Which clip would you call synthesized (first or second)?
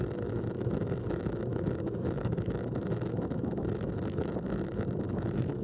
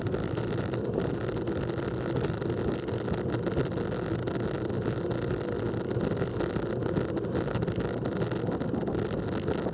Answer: first